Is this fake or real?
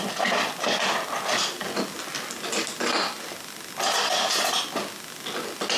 real